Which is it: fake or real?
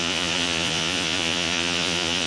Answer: fake